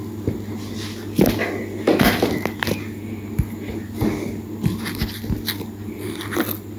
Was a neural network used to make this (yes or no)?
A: no